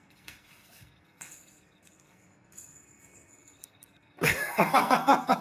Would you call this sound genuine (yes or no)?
no